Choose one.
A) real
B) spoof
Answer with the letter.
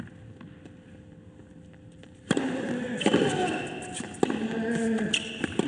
A